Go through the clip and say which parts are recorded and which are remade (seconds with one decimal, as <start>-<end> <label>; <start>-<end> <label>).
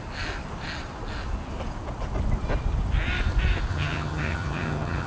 0.0-3.7 recorded; 3.7-5.1 remade